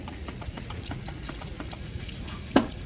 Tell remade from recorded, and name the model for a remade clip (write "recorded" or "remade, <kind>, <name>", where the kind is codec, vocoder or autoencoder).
remade, vocoder, Vocos